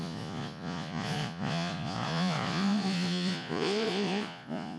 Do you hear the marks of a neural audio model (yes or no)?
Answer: yes